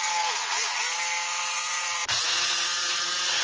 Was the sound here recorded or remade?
remade